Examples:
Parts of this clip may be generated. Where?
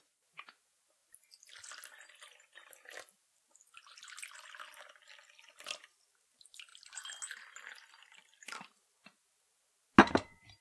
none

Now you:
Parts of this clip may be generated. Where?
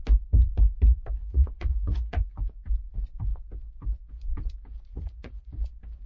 1.2-2.2 (vocoder, Vocos); 4.9-5.5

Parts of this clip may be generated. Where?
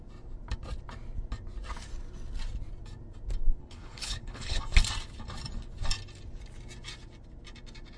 3.6-4.6 (codec, HILCodec)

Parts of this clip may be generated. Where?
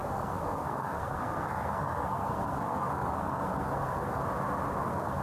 0.0-4.2 (codec, SNAC); 4.8-5.2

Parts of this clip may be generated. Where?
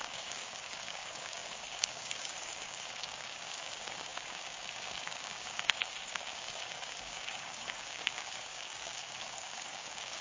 0.0-10.2 (codec, DAC)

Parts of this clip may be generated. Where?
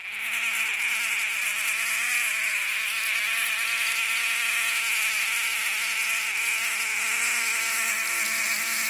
none